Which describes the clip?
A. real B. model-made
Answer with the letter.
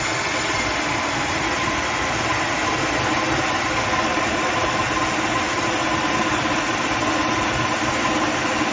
A